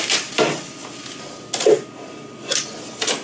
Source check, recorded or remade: recorded